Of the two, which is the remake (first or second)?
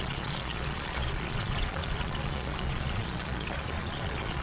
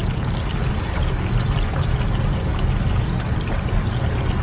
first